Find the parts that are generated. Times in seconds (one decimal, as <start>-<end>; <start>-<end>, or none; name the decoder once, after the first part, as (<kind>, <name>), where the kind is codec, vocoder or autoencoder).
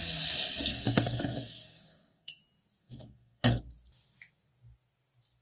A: 0.7-2.4 (codec, SNAC); 2.8-3.6